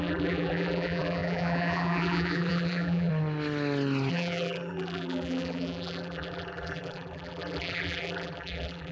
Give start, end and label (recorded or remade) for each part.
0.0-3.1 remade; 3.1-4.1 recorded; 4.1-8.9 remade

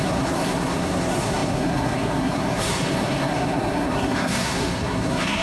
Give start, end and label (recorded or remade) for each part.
0.0-5.4 remade